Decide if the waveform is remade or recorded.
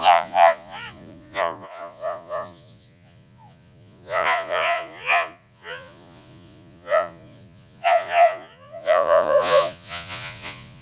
remade